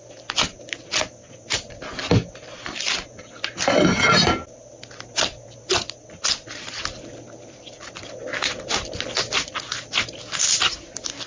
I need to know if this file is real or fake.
real